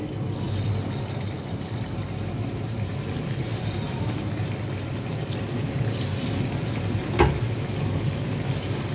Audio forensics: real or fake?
real